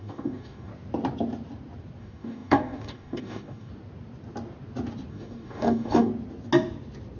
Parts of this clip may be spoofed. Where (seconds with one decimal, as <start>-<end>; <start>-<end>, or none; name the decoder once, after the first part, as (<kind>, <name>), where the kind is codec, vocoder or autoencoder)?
0.0-0.7 (codec, DAC); 2.0-3.7; 5.1-6.1